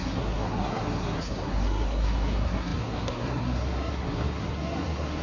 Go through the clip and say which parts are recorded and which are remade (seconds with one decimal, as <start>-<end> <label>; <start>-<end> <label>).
0.0-5.2 remade